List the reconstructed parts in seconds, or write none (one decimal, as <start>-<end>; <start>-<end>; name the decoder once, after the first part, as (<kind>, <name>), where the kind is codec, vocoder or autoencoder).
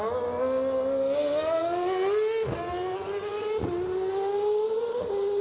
none